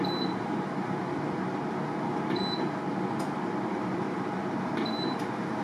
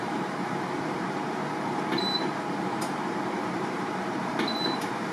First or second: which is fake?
second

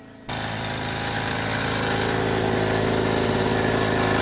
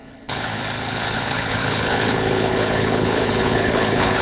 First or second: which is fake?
second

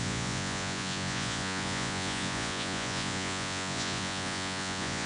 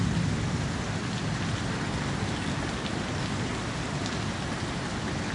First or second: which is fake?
first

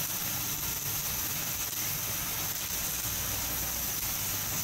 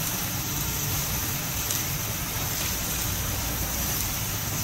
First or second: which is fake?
second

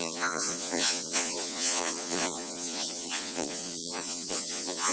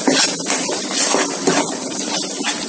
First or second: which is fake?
first